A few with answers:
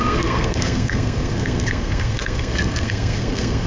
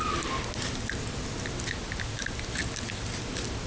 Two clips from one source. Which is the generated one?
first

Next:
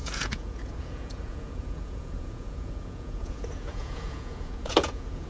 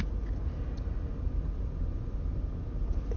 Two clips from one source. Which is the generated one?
first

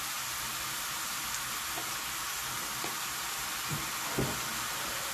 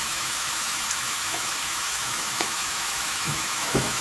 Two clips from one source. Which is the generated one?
second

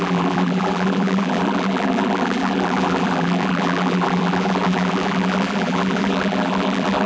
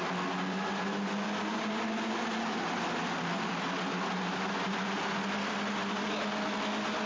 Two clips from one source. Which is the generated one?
first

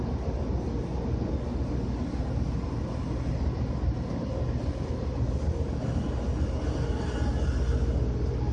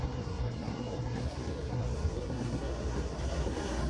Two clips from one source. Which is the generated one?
second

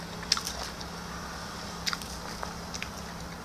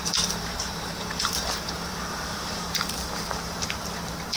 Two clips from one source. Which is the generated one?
second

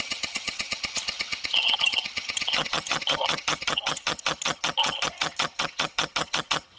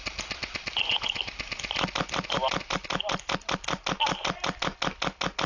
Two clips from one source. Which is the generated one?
first